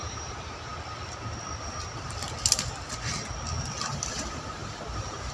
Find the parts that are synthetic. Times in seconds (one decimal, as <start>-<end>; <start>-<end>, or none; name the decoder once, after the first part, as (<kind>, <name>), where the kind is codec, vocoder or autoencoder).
0.0-0.7 (vocoder, BigVGAN v2); 3.9-5.3